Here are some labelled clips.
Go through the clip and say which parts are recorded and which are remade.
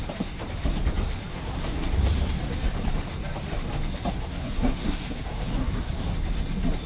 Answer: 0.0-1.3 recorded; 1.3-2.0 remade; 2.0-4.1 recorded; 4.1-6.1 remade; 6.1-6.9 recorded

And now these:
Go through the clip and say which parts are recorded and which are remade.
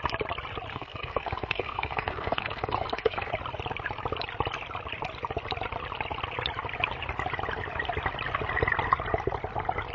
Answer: 0.0-0.7 recorded; 0.7-3.3 remade; 3.3-9.9 recorded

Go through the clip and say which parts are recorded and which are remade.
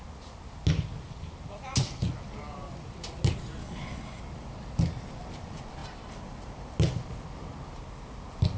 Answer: 0.0-3.6 recorded; 3.6-4.2 remade; 4.2-8.6 recorded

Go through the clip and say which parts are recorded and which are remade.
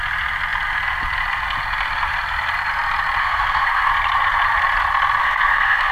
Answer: 0.0-3.2 recorded; 3.2-3.9 remade; 3.9-5.2 recorded; 5.2-5.9 remade